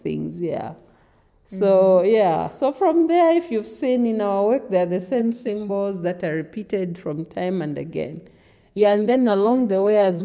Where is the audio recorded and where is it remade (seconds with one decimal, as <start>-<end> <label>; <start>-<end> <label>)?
0.0-5.2 recorded; 5.2-5.7 remade; 5.7-8.6 recorded; 8.6-10.2 remade